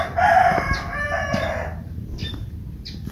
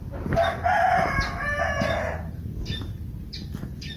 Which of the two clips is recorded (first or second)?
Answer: second